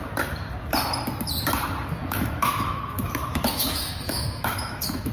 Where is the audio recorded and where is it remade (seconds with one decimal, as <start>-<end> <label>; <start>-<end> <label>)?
0.0-2.0 recorded; 2.0-5.1 remade